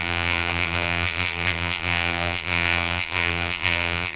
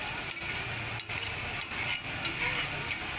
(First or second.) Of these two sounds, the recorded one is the second